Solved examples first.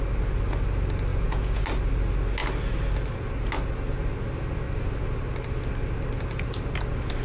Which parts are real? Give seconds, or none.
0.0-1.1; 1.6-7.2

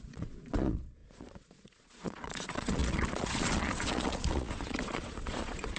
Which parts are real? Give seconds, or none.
none

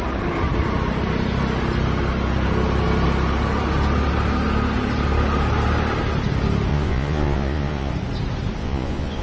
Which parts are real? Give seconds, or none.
0.0-6.7; 7.9-8.6

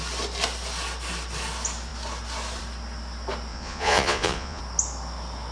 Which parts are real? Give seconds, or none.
0.0-3.5; 4.6-5.5

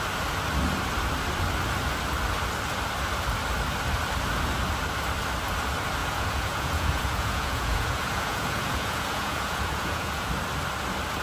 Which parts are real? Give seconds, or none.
0.0-6.0; 10.3-11.2